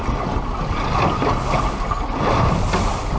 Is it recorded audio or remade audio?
recorded